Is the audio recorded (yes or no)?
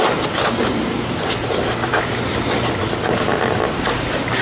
yes